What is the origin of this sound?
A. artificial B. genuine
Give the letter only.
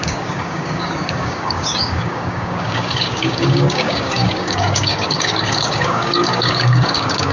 A